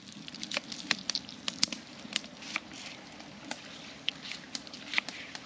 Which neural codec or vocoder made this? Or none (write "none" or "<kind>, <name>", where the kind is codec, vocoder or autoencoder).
vocoder, BigVGAN v2